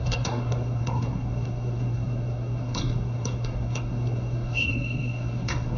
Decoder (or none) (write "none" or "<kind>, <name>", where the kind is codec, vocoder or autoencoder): codec, SNAC